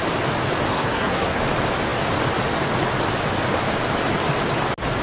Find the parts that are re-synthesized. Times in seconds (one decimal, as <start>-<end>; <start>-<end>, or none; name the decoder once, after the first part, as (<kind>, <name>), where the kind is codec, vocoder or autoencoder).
0.7-1.4 (codec, SNAC)